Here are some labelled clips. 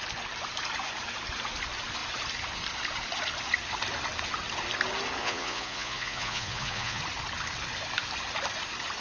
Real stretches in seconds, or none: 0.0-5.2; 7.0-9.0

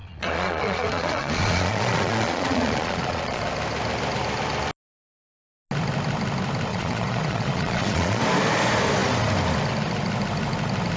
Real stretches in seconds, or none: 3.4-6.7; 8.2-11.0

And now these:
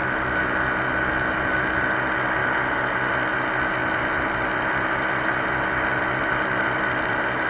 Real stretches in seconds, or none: 0.0-2.4; 3.1-3.8

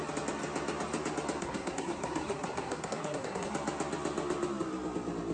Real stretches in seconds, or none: 0.0-1.4; 3.5-5.3

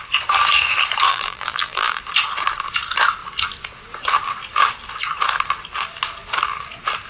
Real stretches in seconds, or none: 0.0-1.1; 2.0-7.1